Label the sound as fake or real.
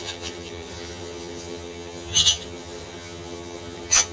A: fake